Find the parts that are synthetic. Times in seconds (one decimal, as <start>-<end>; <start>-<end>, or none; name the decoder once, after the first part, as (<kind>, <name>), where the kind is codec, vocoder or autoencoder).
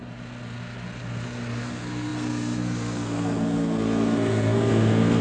1.6-5.2 (codec, SNAC)